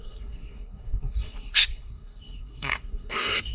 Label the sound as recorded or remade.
remade